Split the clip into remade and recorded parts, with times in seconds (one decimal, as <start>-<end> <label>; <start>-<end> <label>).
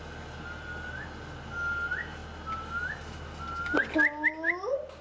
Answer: 0.0-5.0 recorded